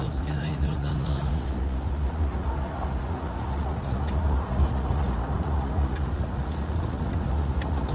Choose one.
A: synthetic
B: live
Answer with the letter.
A